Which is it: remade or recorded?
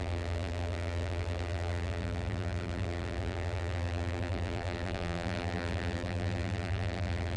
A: remade